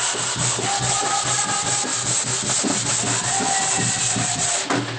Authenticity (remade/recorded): recorded